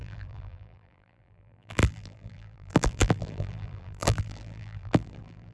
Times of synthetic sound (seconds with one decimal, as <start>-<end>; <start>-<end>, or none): 0.0-5.5